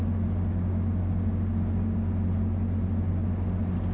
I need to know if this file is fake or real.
real